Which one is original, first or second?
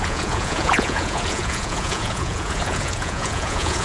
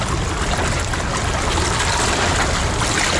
second